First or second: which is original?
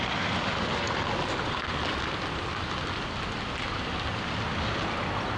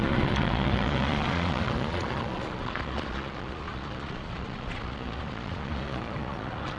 first